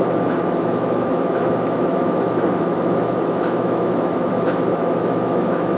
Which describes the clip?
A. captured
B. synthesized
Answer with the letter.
B